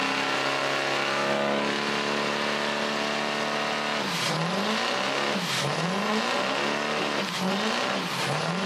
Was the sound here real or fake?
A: real